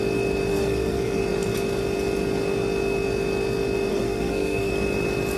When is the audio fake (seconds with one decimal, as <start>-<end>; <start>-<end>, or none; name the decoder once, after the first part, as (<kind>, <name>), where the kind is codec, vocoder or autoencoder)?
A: 0.5-1.2 (codec, SNAC); 3.9-4.7